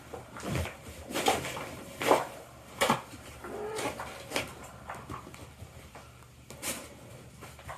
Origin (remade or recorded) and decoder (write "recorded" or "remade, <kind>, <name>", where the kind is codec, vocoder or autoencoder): recorded